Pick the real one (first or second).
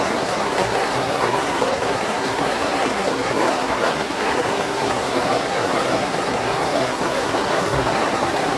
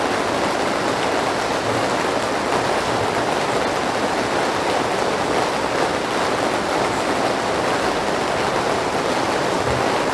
second